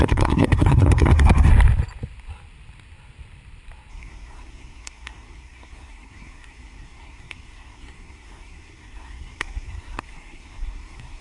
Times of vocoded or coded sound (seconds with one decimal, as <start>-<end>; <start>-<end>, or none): 0.0-1.5; 3.9-11.2